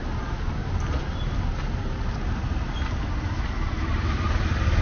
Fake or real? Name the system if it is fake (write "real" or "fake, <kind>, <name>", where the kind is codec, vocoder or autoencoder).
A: real